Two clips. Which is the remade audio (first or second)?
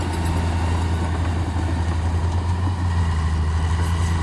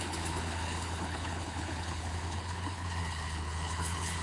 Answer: second